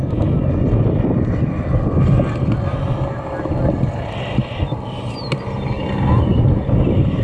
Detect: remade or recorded recorded